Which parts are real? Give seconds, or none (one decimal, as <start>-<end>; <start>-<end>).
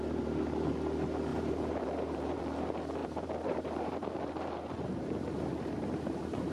0.0-1.3; 2.4-3.0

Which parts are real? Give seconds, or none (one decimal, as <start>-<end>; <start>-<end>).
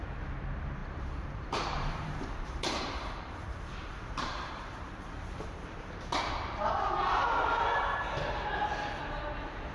0.0-0.8; 5.9-9.7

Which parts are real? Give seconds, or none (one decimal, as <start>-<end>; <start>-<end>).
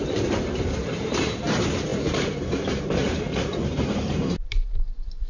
none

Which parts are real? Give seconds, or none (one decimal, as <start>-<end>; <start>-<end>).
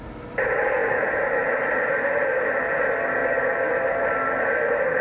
0.0-0.8; 1.7-5.0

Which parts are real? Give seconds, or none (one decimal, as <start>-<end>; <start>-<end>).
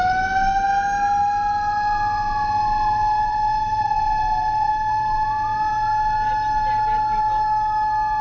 0.0-3.5; 5.7-8.2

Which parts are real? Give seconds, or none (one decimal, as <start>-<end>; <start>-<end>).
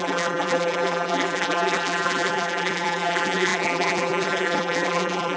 none